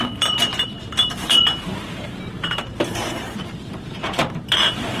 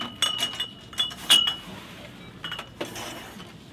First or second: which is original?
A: second